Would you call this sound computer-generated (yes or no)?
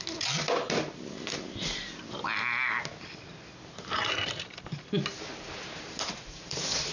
no